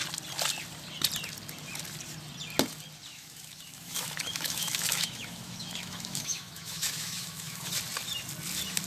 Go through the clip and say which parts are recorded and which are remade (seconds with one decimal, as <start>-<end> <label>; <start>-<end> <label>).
0.0-3.1 recorded; 3.1-7.7 remade; 7.7-8.9 recorded